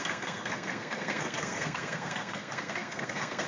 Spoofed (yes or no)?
yes